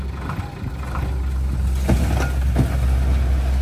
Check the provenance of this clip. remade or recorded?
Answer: recorded